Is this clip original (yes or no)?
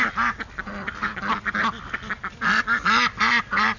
yes